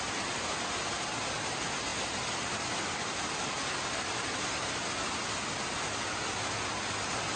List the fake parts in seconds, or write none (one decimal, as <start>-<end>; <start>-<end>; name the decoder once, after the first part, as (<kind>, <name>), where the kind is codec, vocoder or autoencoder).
none